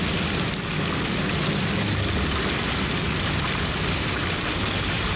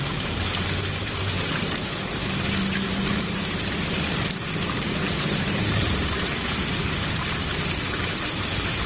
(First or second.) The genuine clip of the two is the first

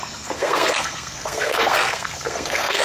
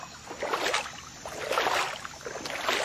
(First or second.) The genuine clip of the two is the second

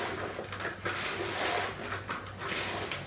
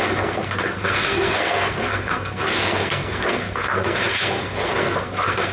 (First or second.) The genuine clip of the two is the first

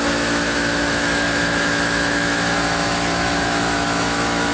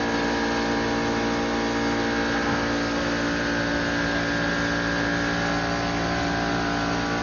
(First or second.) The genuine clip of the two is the second